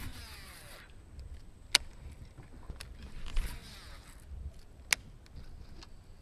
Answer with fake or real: real